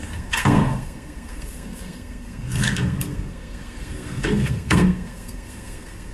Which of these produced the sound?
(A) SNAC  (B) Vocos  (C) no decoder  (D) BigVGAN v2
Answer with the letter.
A